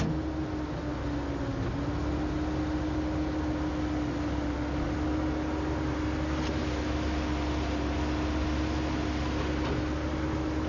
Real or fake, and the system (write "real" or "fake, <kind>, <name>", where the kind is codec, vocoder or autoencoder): real